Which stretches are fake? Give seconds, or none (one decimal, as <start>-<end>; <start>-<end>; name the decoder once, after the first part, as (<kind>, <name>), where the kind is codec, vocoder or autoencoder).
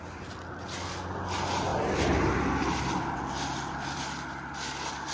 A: 1.7-4.0 (vocoder, BigVGAN v2)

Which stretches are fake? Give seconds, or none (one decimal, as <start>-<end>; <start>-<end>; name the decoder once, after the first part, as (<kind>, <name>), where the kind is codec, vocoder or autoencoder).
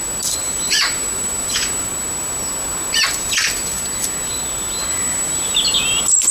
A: 0.4-1.9 (vocoder, BigVGAN v2); 4.9-6.3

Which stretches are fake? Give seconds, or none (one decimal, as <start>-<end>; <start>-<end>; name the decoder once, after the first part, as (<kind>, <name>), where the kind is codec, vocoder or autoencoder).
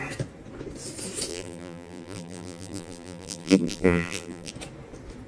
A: 1.3-4.5 (vocoder, BigVGAN v2)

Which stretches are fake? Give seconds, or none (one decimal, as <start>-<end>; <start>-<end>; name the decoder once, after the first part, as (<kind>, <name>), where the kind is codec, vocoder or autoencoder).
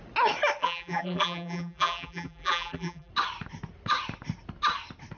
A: 0.6-3.1 (vocoder, BigVGAN v2)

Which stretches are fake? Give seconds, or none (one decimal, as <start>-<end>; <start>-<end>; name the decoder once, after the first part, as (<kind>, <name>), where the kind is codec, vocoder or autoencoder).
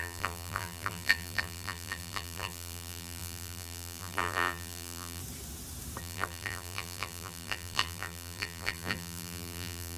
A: 0.0-5.2 (vocoder, BigVGAN v2); 6.0-10.0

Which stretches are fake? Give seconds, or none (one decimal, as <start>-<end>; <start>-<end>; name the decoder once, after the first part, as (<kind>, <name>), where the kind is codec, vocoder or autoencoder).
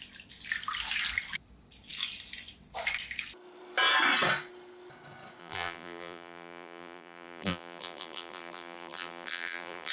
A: 5.4-9.9 (vocoder, BigVGAN v2)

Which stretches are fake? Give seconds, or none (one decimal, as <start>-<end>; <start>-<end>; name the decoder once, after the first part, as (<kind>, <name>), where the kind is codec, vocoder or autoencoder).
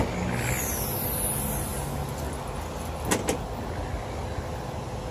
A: none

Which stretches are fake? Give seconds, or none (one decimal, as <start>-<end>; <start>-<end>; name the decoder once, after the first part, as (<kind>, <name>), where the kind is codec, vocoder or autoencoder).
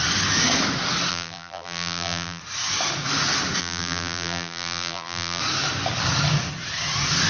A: 1.1-2.4 (vocoder, BigVGAN v2); 3.6-5.4